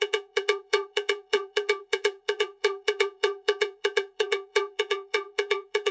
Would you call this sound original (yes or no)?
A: no